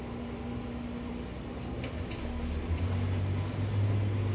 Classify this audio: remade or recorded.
recorded